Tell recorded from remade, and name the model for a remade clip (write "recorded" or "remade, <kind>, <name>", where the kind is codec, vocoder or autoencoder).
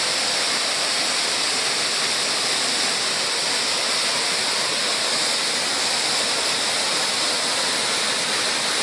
recorded